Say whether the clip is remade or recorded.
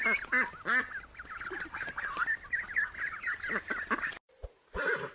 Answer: recorded